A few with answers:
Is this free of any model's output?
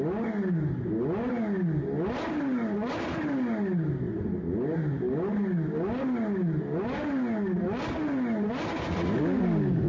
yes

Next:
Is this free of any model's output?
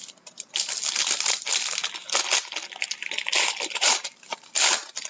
yes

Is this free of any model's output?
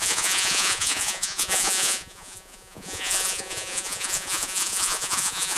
no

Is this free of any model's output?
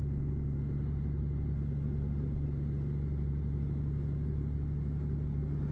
yes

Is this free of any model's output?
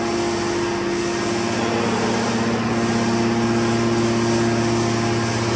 yes